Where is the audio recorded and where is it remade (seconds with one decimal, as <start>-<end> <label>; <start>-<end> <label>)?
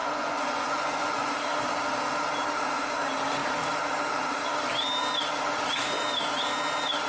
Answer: 0.0-1.3 remade; 1.3-7.1 recorded